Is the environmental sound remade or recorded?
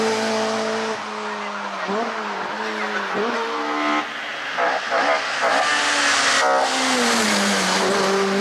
recorded